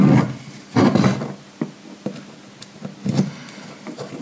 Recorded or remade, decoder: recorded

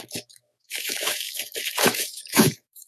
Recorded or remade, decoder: remade, autoencoder, DAC-VAE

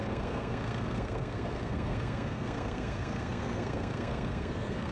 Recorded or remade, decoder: remade, codec, SNAC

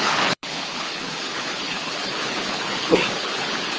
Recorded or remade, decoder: remade, codec, HILCodec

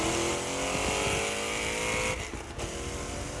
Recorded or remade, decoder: recorded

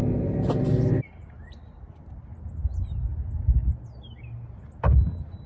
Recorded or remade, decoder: recorded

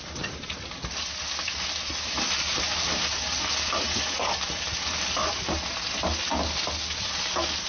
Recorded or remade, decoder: recorded